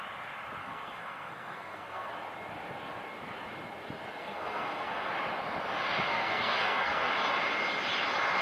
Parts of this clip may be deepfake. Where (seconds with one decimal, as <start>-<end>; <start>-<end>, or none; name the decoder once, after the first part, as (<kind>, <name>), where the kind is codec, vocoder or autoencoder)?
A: 0.6-2.1 (codec, SNAC); 4.2-5.1; 6.1-7.1